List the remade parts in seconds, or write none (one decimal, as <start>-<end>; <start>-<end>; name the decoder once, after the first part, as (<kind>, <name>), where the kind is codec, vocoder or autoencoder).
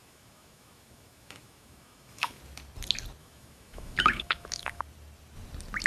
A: 0.0-2.4 (autoencoder, DAC-VAE); 3.2-4.8